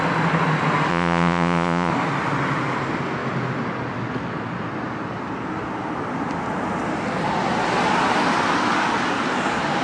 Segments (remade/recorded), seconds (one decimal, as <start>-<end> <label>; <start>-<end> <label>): 0.0-0.9 recorded; 0.9-1.9 remade; 1.9-9.8 recorded